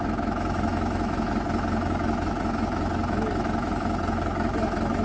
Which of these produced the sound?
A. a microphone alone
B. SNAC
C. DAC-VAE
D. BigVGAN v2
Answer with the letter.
C